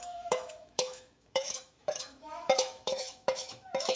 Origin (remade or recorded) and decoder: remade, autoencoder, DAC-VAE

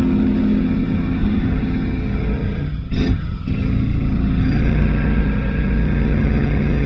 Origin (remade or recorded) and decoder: remade, vocoder, HiFi-GAN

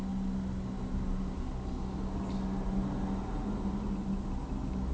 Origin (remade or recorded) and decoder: recorded